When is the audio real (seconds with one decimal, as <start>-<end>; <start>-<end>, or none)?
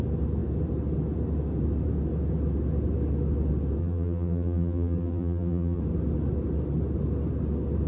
0.0-3.8; 5.8-7.9